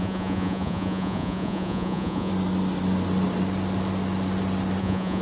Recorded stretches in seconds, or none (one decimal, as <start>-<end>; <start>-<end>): 2.3-4.8